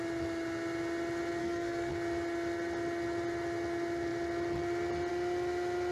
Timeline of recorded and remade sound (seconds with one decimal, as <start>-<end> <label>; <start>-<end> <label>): 0.0-1.4 recorded; 1.4-1.9 remade; 1.9-5.9 recorded